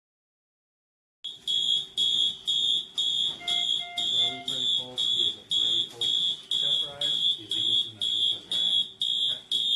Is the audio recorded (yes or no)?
yes